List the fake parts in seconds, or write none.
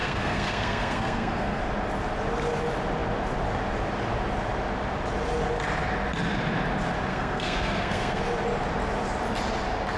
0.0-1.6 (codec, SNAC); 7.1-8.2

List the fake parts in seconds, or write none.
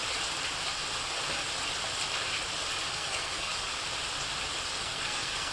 2.9-3.5 (codec, SNAC); 4.7-5.5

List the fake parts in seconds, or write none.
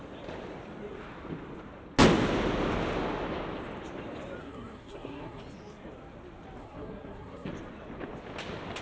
4.4-5.4 (codec, SNAC); 6.6-7.5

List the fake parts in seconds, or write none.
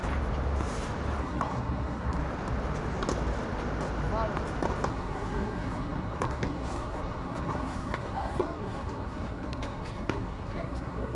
1.2-2.2 (codec, SNAC); 4.9-11.2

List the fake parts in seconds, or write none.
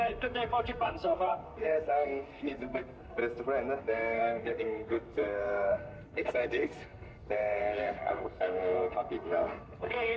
0.0-3.2 (codec, SNAC); 3.8-10.2